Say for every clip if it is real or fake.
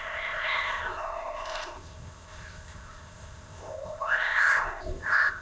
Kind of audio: fake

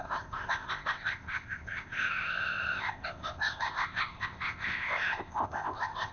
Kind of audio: fake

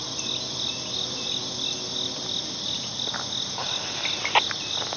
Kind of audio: real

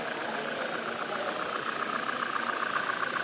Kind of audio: real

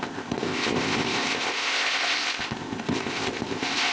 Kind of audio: fake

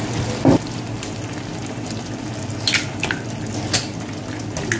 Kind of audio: real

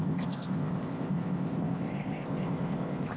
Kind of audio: fake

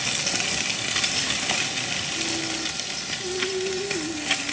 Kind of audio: real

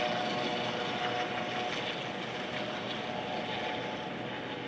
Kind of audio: real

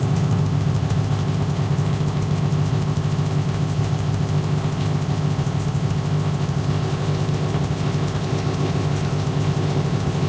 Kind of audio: fake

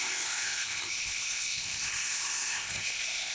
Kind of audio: fake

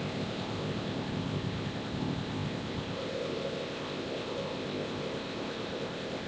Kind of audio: fake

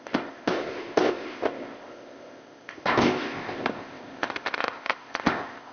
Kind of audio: fake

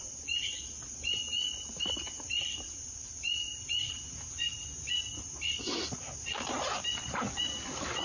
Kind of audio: real